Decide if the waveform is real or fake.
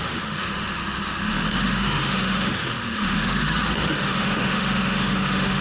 fake